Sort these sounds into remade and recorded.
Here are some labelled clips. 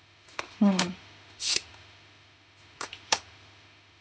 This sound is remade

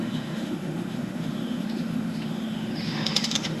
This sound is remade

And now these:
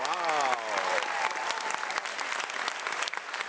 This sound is recorded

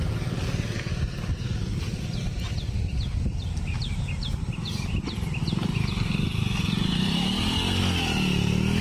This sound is recorded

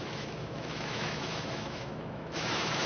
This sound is remade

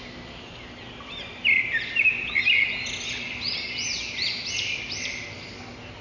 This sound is recorded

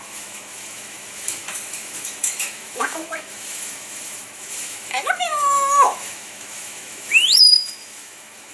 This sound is remade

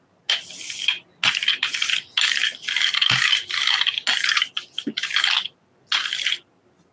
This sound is recorded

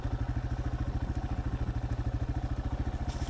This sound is recorded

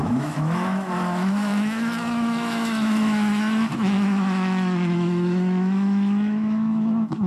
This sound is remade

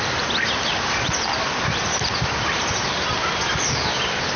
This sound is recorded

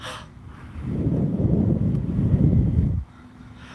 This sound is remade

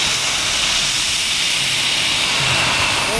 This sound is recorded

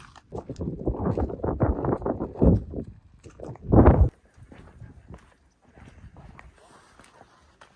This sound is recorded